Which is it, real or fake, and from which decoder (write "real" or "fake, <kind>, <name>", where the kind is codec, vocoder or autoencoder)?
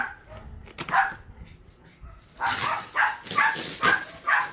real